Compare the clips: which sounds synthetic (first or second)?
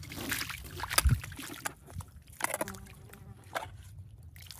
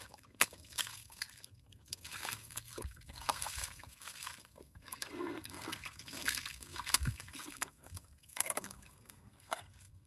second